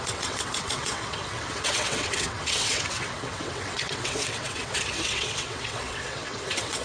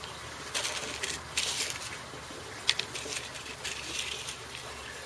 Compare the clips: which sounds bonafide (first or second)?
second